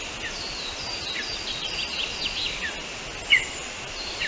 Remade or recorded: recorded